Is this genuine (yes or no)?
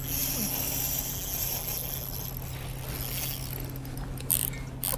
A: yes